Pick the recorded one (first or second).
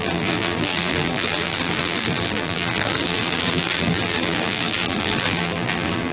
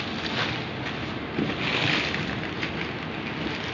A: second